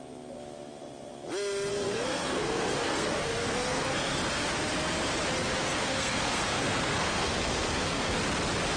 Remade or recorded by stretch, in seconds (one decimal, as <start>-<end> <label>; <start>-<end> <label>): 0.0-1.7 recorded; 1.7-4.3 remade; 4.3-5.6 recorded; 5.6-8.2 remade; 8.2-8.8 recorded